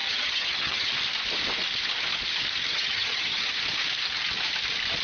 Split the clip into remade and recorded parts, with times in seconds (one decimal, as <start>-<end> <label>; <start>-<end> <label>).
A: 0.0-0.9 remade; 0.9-2.7 recorded; 2.7-3.6 remade; 3.6-5.0 recorded